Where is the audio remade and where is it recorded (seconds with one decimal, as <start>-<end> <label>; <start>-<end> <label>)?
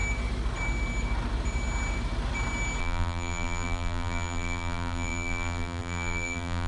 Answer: 0.0-2.8 recorded; 2.8-6.7 remade